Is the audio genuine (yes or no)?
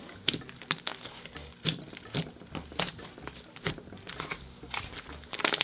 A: yes